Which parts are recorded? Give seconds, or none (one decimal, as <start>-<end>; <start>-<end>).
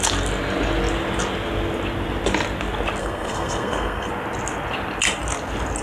0.0-3.0; 4.1-5.8